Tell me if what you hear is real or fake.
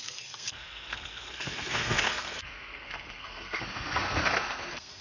fake